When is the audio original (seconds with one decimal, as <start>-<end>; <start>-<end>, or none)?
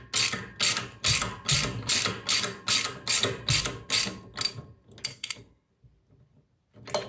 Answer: 0.0-5.1; 5.7-7.1